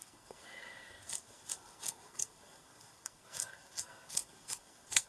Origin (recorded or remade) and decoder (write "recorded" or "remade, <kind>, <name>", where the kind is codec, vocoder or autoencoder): remade, codec, SNAC